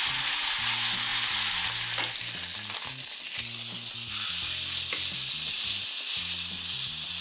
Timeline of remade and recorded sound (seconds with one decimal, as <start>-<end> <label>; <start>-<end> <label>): 0.0-7.2 recorded